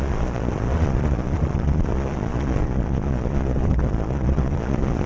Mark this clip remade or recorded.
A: remade